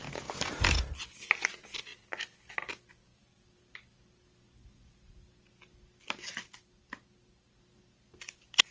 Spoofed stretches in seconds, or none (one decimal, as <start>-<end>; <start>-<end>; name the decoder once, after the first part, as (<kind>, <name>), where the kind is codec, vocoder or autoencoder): 0.0-8.7 (vocoder, BigVGAN v2)